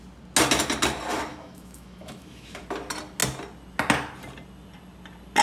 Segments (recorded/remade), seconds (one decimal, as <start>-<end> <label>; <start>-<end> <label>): 0.0-1.3 recorded; 1.3-2.6 remade; 2.6-5.4 recorded